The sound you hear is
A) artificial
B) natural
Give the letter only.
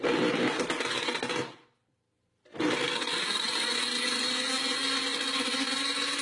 B